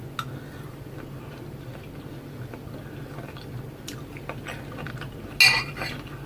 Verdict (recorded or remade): recorded